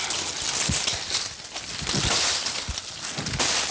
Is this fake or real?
real